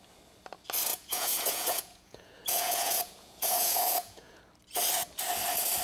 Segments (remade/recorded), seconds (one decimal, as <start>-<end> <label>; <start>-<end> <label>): 0.0-0.9 recorded; 0.9-4.4 remade; 4.4-5.8 recorded

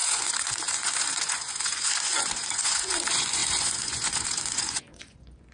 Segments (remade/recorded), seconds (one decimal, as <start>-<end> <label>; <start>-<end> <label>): 0.0-5.5 remade

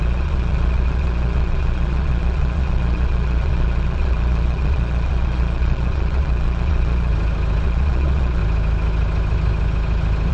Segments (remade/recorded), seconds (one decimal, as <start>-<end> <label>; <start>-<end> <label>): 0.0-7.1 remade; 7.1-7.6 recorded; 7.6-8.4 remade; 8.4-10.3 recorded

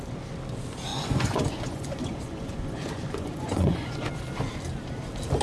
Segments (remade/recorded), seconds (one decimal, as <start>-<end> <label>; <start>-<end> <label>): 0.0-0.9 recorded; 0.9-4.1 remade; 4.1-5.4 recorded

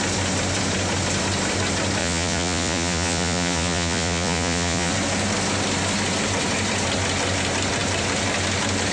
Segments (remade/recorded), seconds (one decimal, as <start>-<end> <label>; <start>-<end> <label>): 0.0-2.0 recorded; 2.0-4.9 remade; 4.9-8.9 recorded

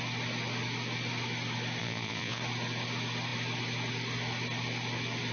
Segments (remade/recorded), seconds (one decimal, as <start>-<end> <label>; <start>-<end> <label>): 0.0-1.8 recorded; 1.8-2.4 remade; 2.4-5.3 recorded

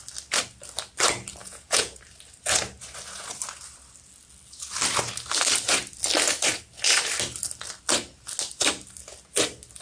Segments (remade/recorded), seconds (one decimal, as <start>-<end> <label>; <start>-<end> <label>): 0.0-1.4 recorded; 1.4-2.0 remade; 2.0-9.8 recorded

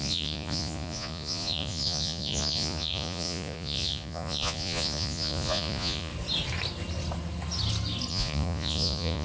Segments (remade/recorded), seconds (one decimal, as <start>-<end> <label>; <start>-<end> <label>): 0.0-6.1 remade; 6.1-8.1 recorded; 8.1-9.2 remade